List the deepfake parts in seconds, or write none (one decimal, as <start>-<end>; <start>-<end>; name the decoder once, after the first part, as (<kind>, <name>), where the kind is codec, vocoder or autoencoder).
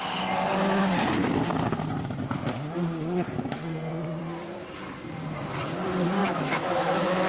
6.2-7.3 (autoencoder, DAC-VAE)